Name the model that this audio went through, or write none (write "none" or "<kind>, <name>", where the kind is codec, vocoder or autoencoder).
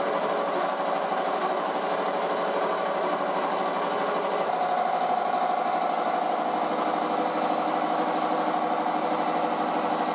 none